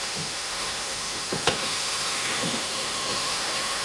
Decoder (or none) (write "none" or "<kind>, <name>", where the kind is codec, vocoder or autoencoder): autoencoder, DAC-VAE